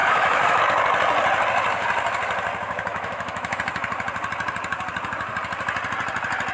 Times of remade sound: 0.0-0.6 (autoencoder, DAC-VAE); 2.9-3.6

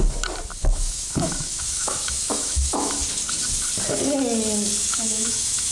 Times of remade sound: 0.6-3.0 (autoencoder, DAC-VAE); 4.8-5.7

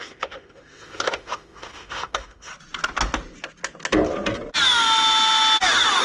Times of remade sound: 0.0-2.5 (autoencoder, DAC-VAE)